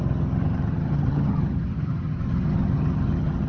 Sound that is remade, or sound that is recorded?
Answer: remade